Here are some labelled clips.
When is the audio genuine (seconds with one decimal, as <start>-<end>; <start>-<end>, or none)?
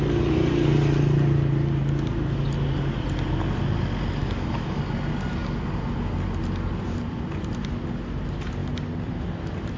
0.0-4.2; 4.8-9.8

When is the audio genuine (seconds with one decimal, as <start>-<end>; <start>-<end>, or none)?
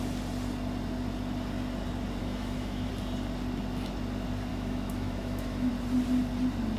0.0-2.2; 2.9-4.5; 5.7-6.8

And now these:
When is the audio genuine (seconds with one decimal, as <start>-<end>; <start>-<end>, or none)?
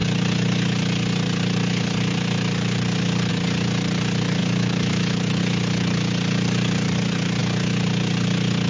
0.0-4.4; 5.4-8.7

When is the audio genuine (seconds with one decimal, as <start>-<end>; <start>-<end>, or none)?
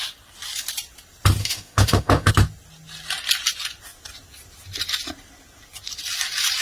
0.0-1.4; 2.3-6.6